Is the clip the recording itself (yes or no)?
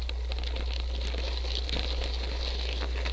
yes